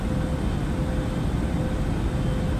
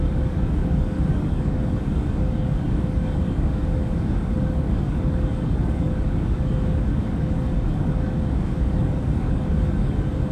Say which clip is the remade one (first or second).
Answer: second